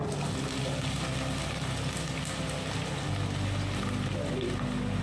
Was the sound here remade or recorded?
recorded